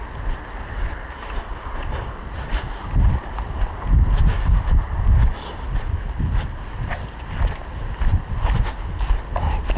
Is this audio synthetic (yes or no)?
no